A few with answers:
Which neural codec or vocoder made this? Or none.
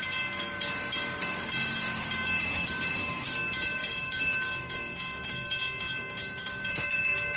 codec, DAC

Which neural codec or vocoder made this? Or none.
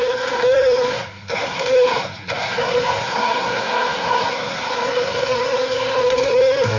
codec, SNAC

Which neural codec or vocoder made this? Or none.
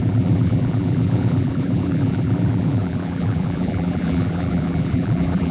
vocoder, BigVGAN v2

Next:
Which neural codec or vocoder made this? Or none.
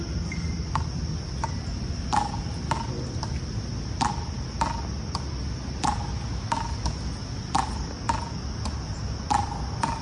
none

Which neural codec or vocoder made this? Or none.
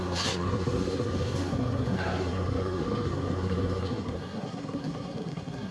codec, SNAC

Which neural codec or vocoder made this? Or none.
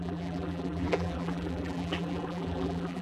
vocoder, BigVGAN v2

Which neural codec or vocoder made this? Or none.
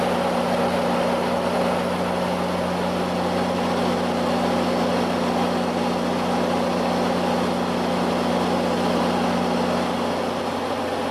none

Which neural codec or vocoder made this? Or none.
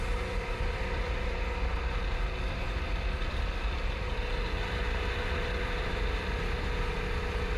none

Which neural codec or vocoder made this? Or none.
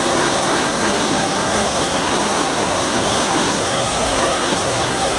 codec, SNAC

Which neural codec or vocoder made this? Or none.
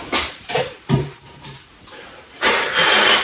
vocoder, BigVGAN v2